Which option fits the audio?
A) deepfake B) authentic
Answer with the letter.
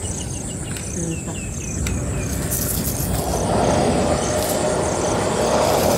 B